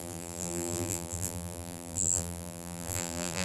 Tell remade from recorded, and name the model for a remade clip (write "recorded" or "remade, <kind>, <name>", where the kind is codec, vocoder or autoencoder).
remade, vocoder, BigVGAN v2